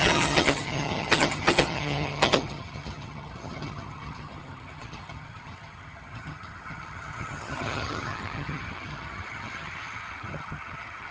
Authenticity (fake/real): fake